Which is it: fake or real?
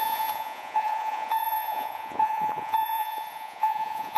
fake